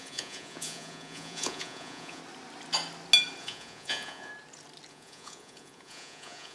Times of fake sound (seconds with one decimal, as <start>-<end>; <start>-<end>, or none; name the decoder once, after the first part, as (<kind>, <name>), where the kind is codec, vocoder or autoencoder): 0.0-2.2 (vocoder, Vocos); 3.4-4.3; 4.9-6.5